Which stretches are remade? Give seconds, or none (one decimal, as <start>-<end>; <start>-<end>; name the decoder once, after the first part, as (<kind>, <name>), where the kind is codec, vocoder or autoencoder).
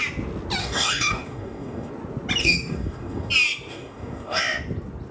0.6-1.9 (codec, DAC); 2.4-3.3; 3.7-4.4